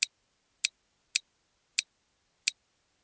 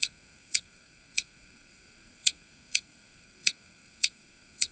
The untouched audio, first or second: first